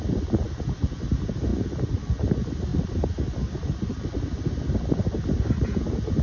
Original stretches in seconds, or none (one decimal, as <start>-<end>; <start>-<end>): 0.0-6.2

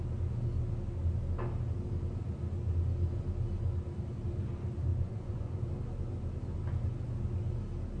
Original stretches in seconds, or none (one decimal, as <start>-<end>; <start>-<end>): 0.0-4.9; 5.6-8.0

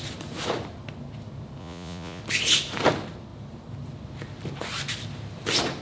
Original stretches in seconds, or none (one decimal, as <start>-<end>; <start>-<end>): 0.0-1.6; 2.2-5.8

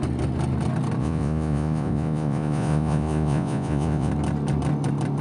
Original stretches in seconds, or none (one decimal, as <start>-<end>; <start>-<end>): 0.0-1.0; 4.1-5.2

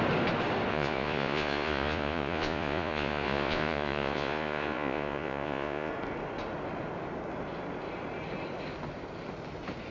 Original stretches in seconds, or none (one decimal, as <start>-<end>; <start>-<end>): 0.0-0.7; 5.9-9.9

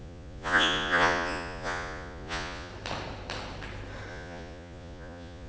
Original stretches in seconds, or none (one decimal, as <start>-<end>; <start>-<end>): 2.7-4.1

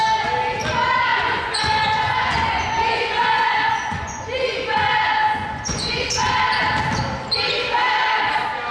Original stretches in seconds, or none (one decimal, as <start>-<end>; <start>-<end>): 0.0-1.1; 6.1-8.7

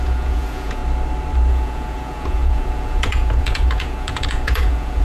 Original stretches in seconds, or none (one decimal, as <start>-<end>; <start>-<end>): 0.8-1.5